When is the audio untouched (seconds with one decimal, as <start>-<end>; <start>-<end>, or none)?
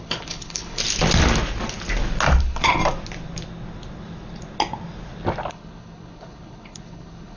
0.8-2.4; 2.8-5.5